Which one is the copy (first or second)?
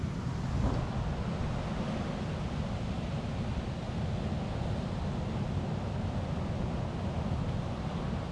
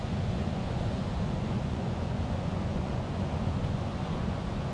second